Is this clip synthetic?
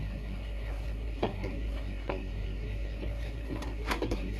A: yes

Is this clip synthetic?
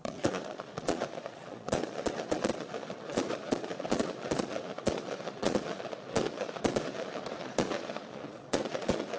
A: yes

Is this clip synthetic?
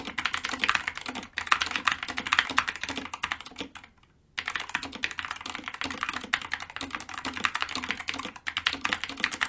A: no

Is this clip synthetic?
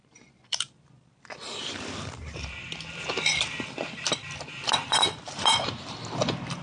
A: yes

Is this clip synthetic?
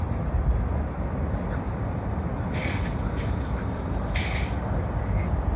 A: no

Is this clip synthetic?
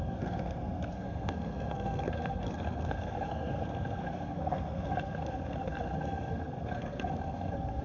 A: yes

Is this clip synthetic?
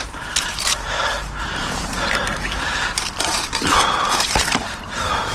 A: yes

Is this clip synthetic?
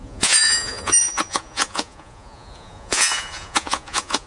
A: yes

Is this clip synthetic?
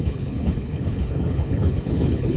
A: yes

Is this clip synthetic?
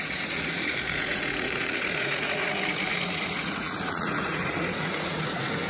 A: yes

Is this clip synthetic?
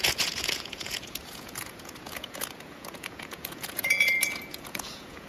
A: yes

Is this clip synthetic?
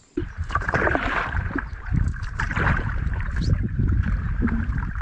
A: yes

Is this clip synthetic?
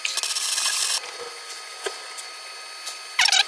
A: no